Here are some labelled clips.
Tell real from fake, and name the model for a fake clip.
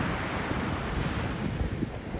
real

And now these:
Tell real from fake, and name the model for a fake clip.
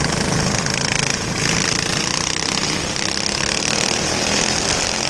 real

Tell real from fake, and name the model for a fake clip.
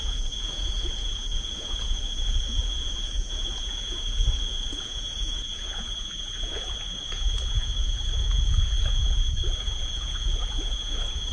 fake, vocoder, Vocos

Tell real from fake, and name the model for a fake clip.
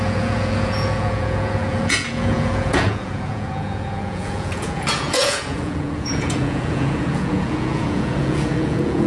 fake, vocoder, Vocos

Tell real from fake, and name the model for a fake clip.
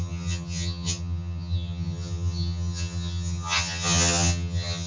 fake, vocoder, HiFi-GAN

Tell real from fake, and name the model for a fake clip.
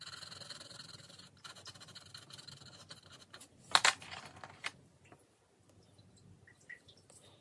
real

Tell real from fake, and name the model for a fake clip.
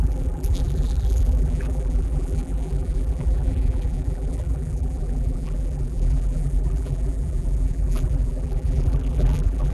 fake, vocoder, BigVGAN v2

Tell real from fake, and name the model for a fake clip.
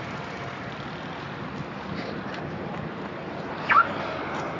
real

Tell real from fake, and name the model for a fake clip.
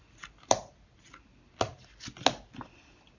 real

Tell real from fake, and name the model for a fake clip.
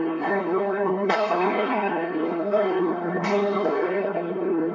fake, codec, SNAC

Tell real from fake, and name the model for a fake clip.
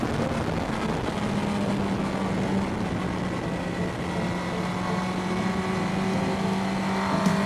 real